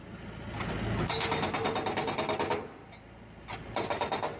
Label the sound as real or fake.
real